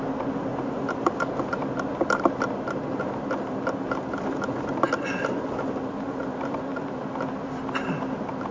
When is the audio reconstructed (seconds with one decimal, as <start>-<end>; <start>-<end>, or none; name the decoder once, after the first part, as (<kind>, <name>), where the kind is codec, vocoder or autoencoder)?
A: none